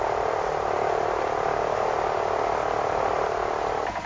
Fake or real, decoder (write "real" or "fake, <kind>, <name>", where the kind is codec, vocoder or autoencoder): real